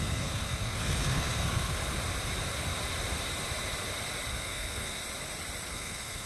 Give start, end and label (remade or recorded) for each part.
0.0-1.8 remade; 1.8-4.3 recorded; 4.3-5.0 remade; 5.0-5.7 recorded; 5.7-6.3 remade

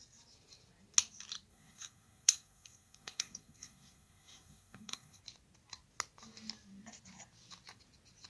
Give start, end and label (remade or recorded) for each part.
0.0-1.5 recorded; 1.5-5.2 remade; 5.2-8.3 recorded

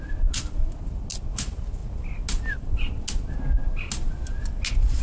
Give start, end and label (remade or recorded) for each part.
0.0-5.0 recorded

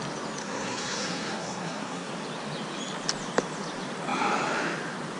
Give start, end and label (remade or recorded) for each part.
0.0-0.4 recorded; 0.4-2.1 remade; 2.1-5.2 recorded

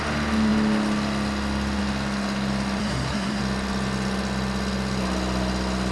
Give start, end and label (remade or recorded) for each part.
0.0-2.8 recorded; 2.8-3.4 remade; 3.4-5.9 recorded

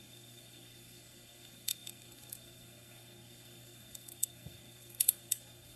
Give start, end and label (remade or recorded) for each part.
0.0-5.8 remade